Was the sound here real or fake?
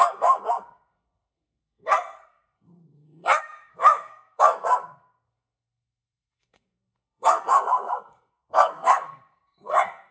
fake